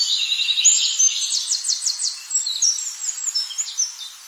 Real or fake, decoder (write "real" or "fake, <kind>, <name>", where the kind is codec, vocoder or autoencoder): fake, vocoder, BigVGAN v2